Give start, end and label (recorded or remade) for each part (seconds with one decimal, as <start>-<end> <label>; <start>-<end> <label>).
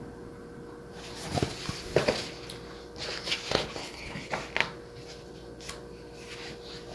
0.0-3.8 recorded; 3.8-4.3 remade; 4.3-6.9 recorded